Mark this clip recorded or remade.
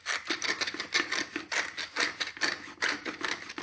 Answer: recorded